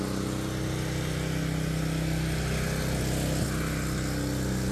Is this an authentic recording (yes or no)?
yes